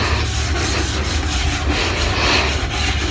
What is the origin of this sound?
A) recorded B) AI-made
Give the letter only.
A